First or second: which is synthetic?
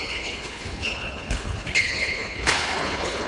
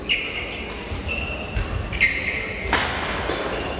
first